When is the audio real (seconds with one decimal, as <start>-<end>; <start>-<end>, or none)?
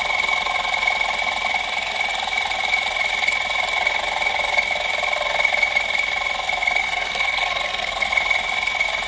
0.0-6.8; 8.1-9.1